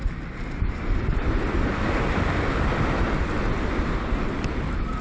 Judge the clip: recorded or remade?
recorded